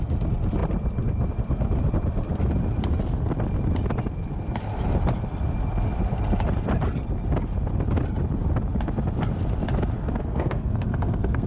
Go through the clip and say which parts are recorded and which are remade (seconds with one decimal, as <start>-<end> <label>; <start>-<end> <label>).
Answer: 0.0-10.2 recorded; 10.2-11.5 remade